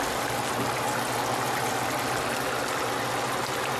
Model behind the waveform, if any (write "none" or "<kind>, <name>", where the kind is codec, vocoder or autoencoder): none